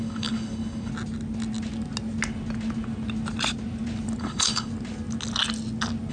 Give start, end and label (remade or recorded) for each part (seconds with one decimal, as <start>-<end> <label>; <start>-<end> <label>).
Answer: 0.0-0.9 remade; 0.9-4.2 recorded; 4.2-4.7 remade; 4.7-6.1 recorded